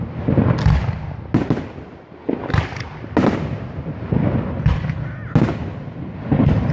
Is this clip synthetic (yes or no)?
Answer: no